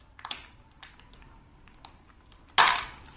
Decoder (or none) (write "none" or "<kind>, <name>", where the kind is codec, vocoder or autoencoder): none